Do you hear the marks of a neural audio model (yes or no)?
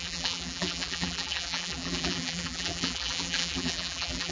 yes